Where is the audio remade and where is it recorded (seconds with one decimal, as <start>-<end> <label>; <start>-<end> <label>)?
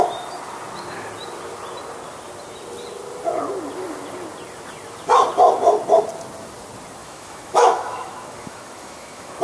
0.0-7.0 recorded; 7.0-9.4 remade